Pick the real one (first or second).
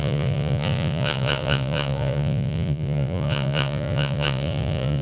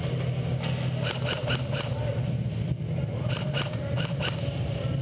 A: second